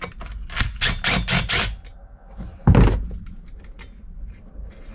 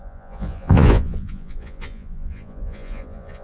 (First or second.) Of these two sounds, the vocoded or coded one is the second